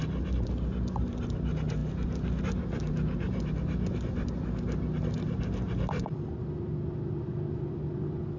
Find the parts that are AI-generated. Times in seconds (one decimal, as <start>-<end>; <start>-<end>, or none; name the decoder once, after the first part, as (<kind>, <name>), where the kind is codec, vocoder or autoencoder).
none